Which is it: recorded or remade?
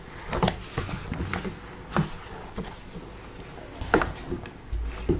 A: recorded